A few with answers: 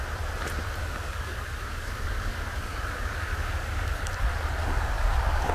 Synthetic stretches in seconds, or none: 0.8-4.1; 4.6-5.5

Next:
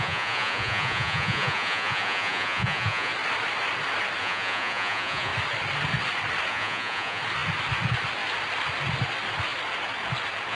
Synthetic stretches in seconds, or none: 0.0-3.1; 4.2-5.3; 6.5-7.2

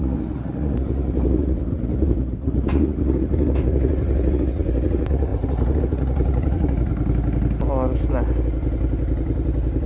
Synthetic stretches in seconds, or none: 0.0-6.9

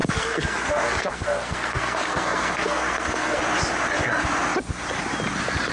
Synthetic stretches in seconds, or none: 0.0-3.4

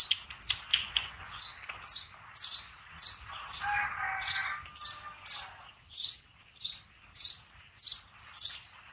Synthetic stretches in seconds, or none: 0.7-1.4

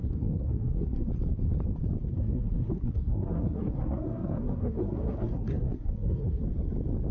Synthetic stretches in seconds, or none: 0.0-1.1; 2.1-6.4

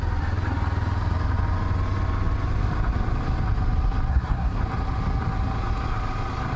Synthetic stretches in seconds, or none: 4.1-4.6